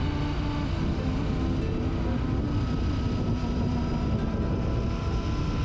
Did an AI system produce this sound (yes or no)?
no